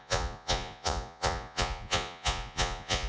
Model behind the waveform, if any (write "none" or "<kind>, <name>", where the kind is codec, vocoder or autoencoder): vocoder, Vocos